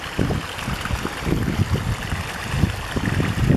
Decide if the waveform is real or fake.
real